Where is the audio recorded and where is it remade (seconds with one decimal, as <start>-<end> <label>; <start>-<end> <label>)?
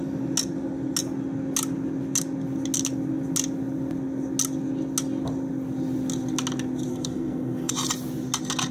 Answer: 0.0-6.9 recorded; 6.9-7.7 remade; 7.7-8.7 recorded